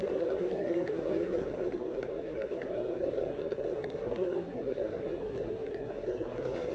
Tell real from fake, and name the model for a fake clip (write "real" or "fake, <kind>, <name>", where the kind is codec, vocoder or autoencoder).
fake, codec, SNAC